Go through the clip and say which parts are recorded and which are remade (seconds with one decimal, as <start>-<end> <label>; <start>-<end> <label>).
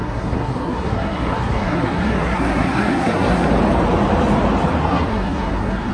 0.0-3.5 remade; 3.5-4.8 recorded; 4.8-5.9 remade